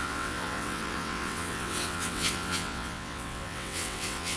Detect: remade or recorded remade